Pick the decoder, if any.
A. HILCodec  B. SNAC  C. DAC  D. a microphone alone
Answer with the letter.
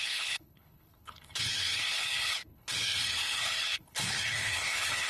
A